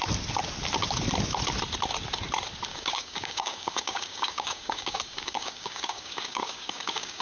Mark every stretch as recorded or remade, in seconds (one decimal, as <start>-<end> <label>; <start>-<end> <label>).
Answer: 0.0-2.7 recorded; 2.7-7.2 remade